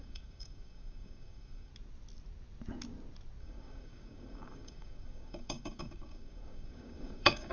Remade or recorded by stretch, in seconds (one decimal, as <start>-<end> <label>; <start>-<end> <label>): 0.0-1.7 remade; 1.7-3.4 recorded; 3.4-7.5 remade